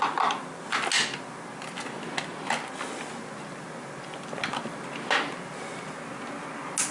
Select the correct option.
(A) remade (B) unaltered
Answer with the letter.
B